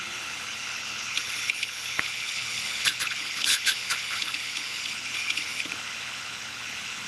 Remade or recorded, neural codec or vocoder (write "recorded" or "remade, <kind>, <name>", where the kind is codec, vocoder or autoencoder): remade, codec, HILCodec